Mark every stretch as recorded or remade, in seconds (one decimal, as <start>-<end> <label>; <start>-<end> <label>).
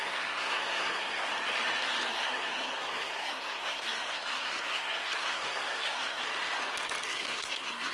0.0-1.3 remade; 1.3-2.1 recorded; 2.1-6.2 remade; 6.2-7.1 recorded; 7.1-7.9 remade